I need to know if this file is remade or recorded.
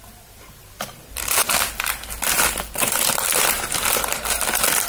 recorded